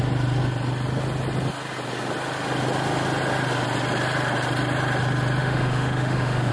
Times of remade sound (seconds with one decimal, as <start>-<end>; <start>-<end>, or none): 5.4-6.5